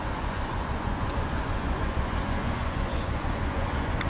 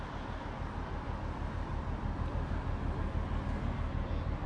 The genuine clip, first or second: second